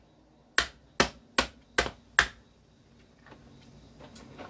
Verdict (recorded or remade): recorded